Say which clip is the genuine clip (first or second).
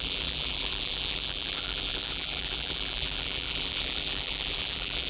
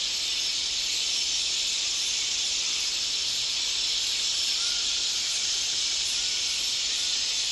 second